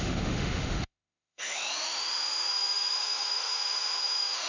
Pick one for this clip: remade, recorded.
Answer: remade